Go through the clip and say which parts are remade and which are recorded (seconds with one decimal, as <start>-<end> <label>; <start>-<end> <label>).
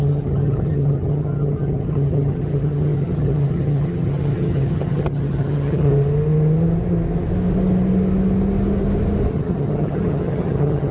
0.0-5.9 remade; 5.9-9.3 recorded; 9.3-10.9 remade